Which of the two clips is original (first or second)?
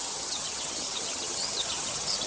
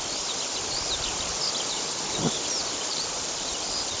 second